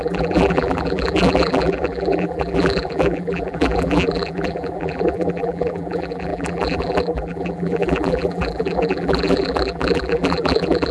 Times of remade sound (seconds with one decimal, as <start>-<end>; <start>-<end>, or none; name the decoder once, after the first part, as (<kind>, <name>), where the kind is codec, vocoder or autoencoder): 0.0-10.9 (vocoder, BigVGAN v2)

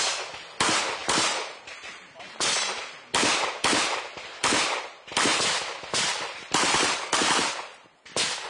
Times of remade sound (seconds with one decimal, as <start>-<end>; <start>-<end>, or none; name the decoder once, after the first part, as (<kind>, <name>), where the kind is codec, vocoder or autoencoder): 1.0-2.8 (vocoder, BigVGAN v2); 6.1-7.3

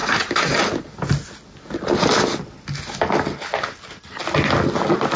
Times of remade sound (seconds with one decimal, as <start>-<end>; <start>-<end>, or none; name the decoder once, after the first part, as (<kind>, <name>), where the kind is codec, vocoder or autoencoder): 0.0-0.6 (vocoder, BigVGAN v2)

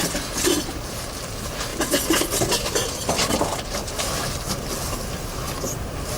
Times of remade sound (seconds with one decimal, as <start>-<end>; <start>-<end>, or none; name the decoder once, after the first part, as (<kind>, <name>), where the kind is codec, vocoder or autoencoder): none